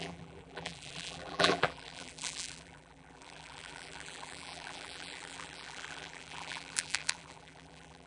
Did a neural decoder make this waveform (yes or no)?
yes